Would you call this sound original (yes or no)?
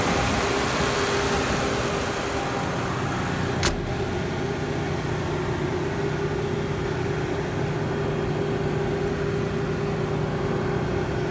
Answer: yes